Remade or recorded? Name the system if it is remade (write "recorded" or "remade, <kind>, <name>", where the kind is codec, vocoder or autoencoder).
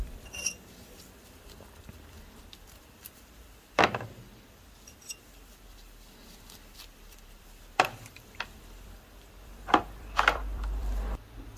remade, vocoder, BigVGAN v2